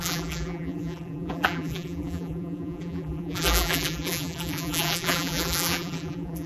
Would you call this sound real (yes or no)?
no